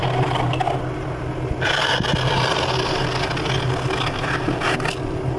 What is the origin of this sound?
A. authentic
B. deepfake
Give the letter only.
A